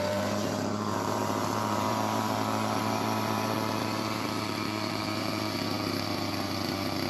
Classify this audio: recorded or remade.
remade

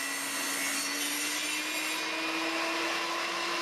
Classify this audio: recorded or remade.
recorded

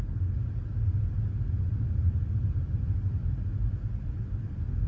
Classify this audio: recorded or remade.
recorded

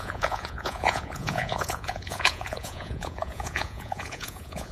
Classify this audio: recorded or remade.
remade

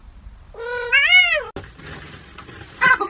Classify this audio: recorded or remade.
recorded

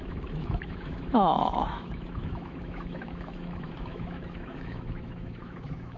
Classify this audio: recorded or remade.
remade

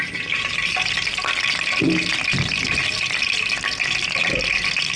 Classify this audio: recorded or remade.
recorded